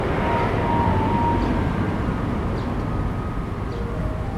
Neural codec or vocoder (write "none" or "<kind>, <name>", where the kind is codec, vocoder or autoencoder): none